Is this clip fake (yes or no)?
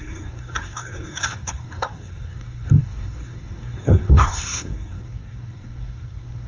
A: yes